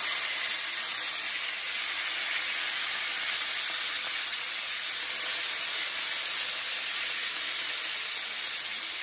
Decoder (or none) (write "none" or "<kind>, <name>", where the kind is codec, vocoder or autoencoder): none